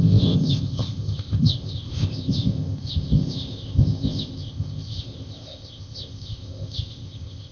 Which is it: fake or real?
fake